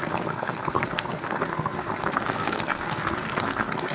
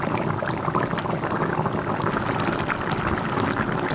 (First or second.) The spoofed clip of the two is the first